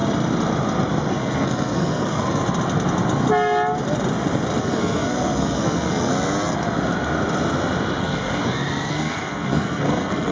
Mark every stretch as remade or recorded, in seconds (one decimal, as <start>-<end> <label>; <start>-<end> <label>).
0.0-1.1 recorded; 1.1-2.4 remade; 2.4-4.6 recorded; 4.6-6.1 remade; 6.1-8.0 recorded; 8.0-8.4 remade; 8.4-8.9 recorded; 8.9-10.3 remade